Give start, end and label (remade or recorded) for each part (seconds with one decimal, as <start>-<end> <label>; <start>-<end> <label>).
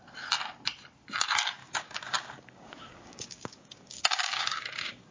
0.0-1.6 recorded; 1.6-5.1 remade